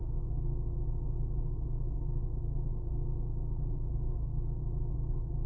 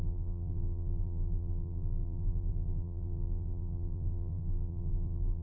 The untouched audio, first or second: first